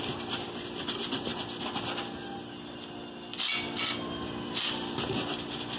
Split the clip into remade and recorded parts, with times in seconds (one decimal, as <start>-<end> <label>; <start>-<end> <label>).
0.0-5.8 recorded